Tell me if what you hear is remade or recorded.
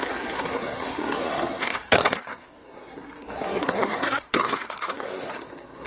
remade